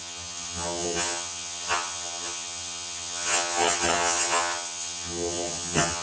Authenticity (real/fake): fake